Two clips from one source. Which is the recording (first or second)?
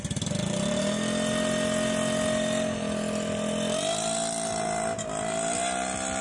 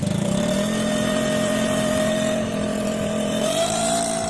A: first